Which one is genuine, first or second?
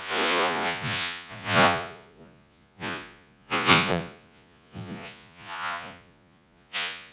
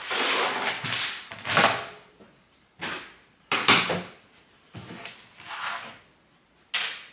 second